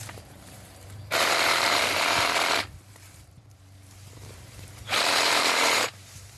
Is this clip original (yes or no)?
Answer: no